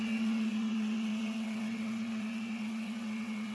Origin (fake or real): fake